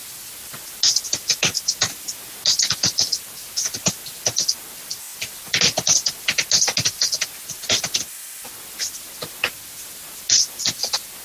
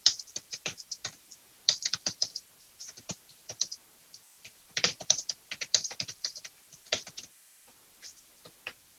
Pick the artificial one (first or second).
second